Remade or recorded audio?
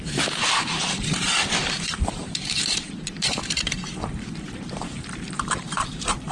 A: remade